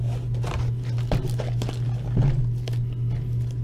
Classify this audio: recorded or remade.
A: recorded